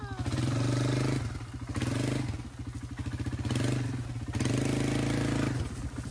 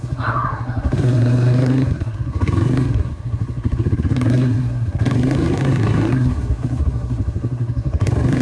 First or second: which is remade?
second